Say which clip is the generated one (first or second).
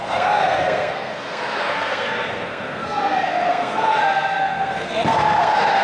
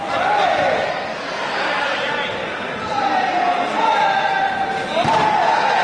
first